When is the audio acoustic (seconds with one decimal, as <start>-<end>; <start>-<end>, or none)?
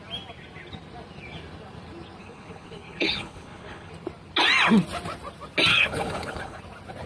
0.0-2.2; 3.9-5.7; 6.6-7.1